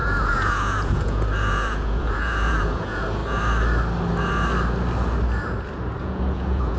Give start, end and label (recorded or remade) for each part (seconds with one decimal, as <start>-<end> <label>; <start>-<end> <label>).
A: 0.0-3.2 remade; 3.2-6.0 recorded; 6.0-6.8 remade